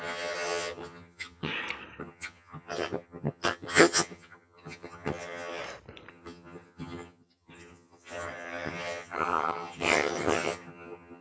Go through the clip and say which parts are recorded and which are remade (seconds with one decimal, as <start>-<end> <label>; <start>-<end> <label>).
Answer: 0.0-1.5 remade; 1.5-2.0 recorded; 2.0-5.6 remade; 5.6-6.1 recorded; 6.1-11.2 remade